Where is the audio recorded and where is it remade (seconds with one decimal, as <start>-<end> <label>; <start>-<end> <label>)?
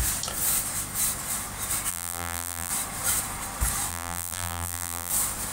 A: 0.0-1.9 recorded; 1.9-2.7 remade; 2.7-3.9 recorded; 3.9-5.1 remade; 5.1-5.5 recorded